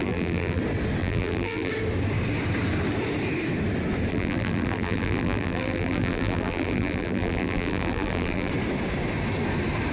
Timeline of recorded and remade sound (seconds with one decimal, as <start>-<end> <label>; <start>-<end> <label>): 0.0-0.6 remade; 0.6-1.0 recorded; 1.0-1.7 remade; 1.7-4.1 recorded; 4.1-8.5 remade; 8.5-9.9 recorded